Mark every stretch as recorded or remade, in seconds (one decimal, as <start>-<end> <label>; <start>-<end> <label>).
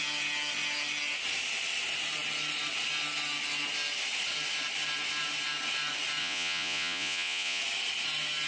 0.0-6.2 recorded; 6.2-7.6 remade; 7.6-8.5 recorded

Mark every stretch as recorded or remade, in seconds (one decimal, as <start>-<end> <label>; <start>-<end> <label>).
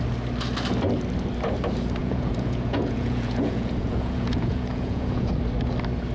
0.0-2.0 recorded; 2.0-5.3 remade; 5.3-6.1 recorded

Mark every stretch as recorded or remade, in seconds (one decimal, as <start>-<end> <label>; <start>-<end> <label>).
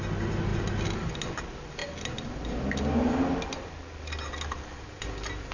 0.0-5.5 recorded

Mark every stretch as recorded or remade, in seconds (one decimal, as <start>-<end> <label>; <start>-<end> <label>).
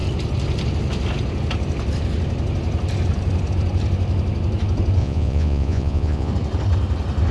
0.0-5.0 recorded; 5.0-6.3 remade; 6.3-7.3 recorded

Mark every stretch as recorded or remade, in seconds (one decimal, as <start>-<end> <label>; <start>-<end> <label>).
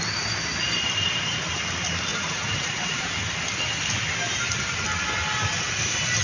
0.0-2.1 recorded; 2.1-3.0 remade; 3.0-6.2 recorded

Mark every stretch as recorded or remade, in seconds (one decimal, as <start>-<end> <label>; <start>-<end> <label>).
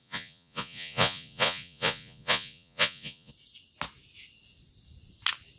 0.0-3.3 remade; 3.3-5.6 recorded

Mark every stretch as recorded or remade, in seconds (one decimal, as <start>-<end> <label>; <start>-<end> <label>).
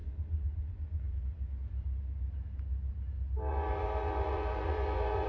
0.0-1.2 remade; 1.2-3.5 recorded; 3.5-5.3 remade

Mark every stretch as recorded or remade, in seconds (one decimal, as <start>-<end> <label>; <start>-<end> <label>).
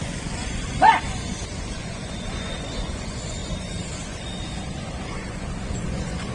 0.0-6.3 remade